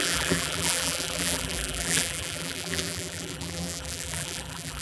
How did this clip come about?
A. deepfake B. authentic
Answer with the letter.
A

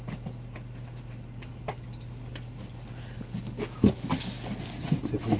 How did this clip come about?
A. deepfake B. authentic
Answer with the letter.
B